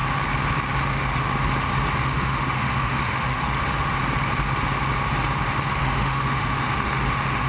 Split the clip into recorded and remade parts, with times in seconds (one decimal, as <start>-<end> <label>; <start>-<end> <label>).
0.0-0.9 recorded; 0.9-1.3 remade; 1.3-2.0 recorded; 2.0-3.6 remade; 3.6-5.8 recorded; 5.8-7.5 remade